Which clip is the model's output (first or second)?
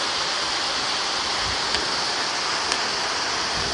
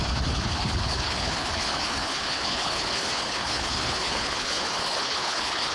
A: second